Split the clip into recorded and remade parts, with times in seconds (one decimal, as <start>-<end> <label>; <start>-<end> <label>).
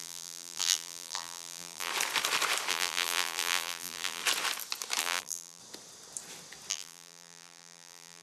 0.0-1.9 remade; 1.9-2.7 recorded; 2.7-4.2 remade; 4.2-5.0 recorded; 5.0-5.6 remade; 5.6-6.7 recorded; 6.7-8.2 remade